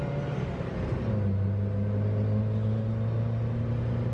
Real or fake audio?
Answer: real